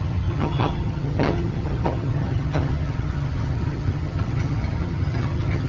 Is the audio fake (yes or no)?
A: yes